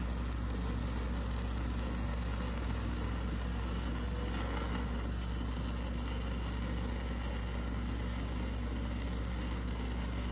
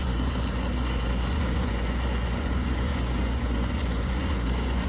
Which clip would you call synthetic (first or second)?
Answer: second